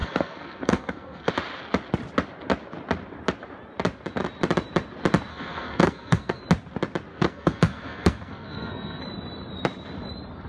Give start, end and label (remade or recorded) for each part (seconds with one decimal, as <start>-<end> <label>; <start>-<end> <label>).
0.0-1.3 remade; 1.3-5.3 recorded; 5.3-6.4 remade; 6.4-7.1 recorded; 7.1-9.0 remade; 9.0-10.5 recorded